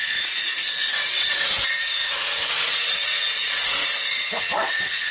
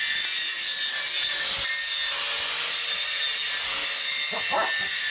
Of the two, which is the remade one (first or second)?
first